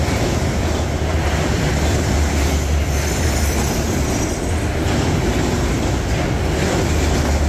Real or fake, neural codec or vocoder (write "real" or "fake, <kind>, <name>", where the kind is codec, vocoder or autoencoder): real